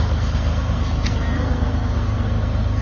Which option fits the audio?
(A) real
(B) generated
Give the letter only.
B